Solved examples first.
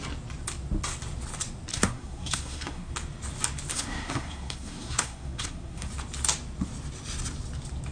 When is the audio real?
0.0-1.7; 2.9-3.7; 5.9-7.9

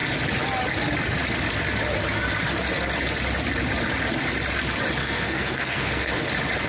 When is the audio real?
0.0-5.0; 6.2-6.7